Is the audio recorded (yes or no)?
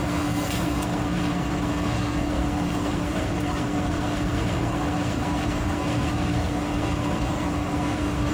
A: no